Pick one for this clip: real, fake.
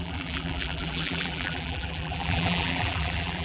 fake